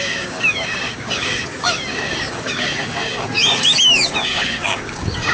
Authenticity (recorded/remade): remade